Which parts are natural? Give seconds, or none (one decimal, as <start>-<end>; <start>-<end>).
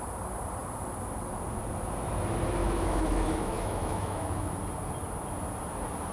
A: 0.0-2.6; 4.5-6.1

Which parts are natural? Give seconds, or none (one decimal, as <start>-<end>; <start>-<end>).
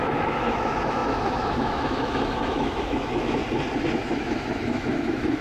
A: 3.4-4.0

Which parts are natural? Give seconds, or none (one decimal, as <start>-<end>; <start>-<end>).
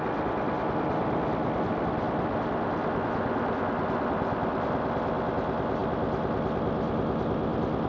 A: 0.0-7.9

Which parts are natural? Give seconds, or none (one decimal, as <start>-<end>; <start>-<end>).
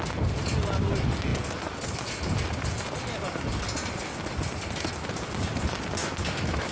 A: 0.0-6.0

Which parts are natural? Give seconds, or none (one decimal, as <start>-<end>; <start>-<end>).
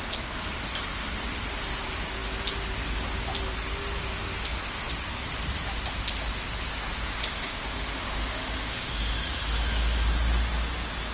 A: 0.0-7.2; 9.0-11.1